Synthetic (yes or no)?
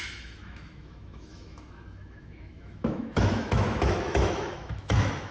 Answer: yes